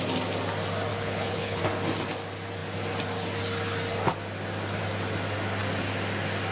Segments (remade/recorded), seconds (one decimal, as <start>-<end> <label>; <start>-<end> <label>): 0.0-0.9 recorded; 0.9-1.6 remade; 1.6-6.5 recorded